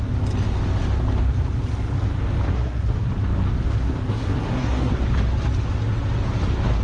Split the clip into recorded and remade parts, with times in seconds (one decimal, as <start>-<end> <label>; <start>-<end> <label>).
0.0-2.5 recorded; 2.5-3.1 remade; 3.1-4.1 recorded; 4.1-4.9 remade; 4.9-6.8 recorded